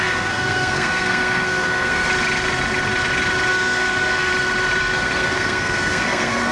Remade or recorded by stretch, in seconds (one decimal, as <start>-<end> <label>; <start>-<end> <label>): 0.0-2.1 remade; 2.1-3.5 recorded; 3.5-4.3 remade; 4.3-4.8 recorded; 4.8-6.5 remade